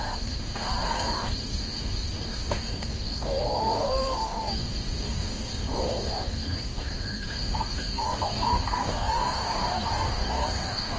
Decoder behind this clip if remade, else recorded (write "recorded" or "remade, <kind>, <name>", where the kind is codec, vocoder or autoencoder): remade, codec, DAC